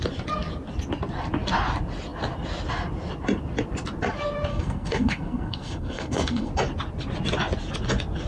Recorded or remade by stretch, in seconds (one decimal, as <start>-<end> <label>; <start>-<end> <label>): 0.0-4.5 recorded; 4.5-6.5 remade; 6.5-8.3 recorded